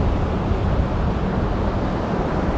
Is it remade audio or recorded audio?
recorded